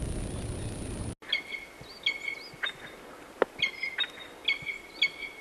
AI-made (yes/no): no